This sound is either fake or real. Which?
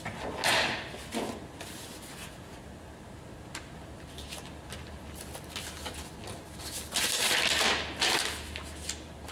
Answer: real